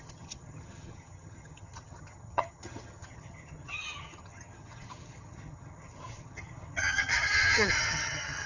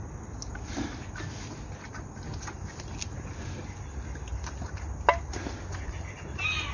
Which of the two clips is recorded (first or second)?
second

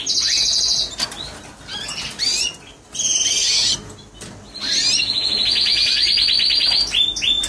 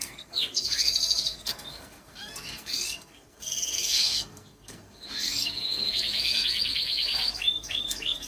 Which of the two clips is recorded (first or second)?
first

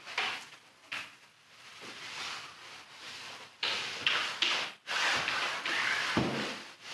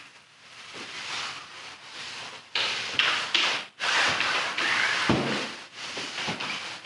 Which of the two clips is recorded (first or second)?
first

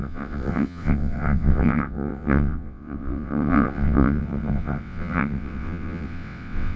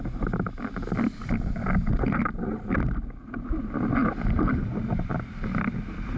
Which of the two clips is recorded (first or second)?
second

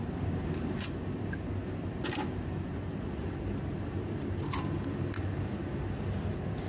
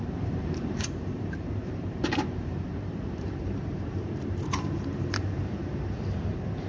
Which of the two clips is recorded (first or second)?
first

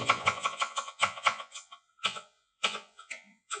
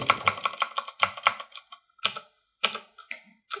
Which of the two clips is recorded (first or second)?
second